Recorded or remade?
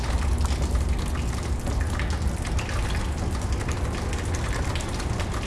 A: recorded